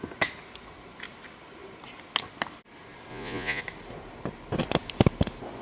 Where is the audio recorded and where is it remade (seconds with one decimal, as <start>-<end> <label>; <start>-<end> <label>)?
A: 0.0-3.1 recorded; 3.1-3.6 remade; 3.6-5.6 recorded